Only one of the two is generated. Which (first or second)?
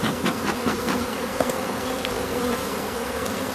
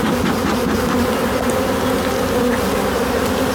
first